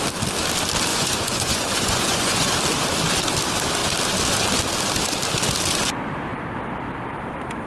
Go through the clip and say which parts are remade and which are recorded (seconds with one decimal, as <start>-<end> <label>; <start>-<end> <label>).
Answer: 0.0-0.9 recorded; 0.9-2.5 remade; 2.5-7.7 recorded